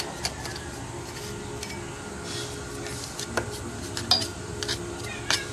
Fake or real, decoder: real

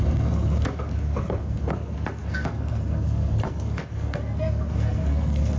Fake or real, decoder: fake, codec, SNAC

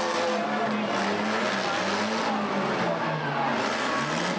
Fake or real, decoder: real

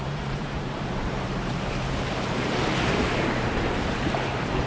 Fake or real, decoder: fake, vocoder, BigVGAN v2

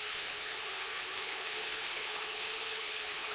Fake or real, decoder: fake, codec, HILCodec